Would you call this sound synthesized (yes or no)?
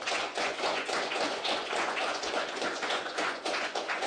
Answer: yes